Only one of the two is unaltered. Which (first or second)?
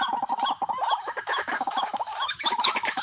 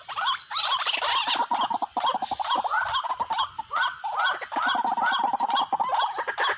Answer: second